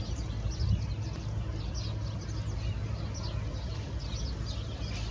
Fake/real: real